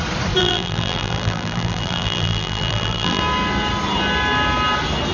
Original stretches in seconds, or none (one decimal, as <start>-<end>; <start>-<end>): 0.0-0.4; 3.2-5.1